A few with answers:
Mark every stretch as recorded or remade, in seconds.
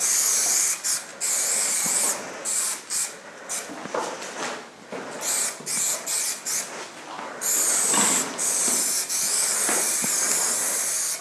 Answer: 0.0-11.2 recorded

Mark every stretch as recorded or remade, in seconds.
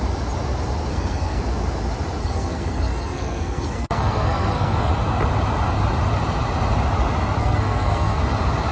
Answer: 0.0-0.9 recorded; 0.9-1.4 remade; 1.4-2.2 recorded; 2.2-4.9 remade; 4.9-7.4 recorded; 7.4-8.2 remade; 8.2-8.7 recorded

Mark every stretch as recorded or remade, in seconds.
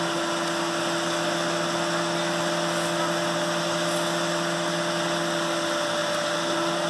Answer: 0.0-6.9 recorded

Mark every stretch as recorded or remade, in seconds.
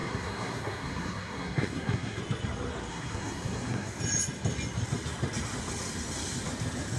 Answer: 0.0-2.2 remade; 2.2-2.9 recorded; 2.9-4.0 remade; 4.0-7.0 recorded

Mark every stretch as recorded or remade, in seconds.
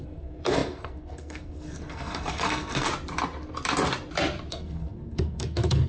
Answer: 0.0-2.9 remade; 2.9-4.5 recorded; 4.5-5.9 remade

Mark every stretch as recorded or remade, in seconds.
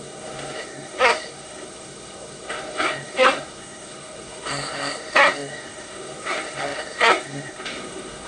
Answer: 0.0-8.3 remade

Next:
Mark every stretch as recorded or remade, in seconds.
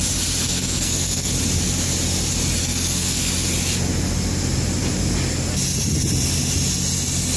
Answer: 0.0-0.4 recorded; 0.4-1.3 remade; 1.3-2.6 recorded; 2.6-3.2 remade; 3.2-7.4 recorded